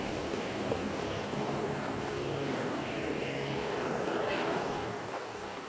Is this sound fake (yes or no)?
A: yes